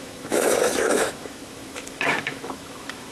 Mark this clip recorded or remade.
remade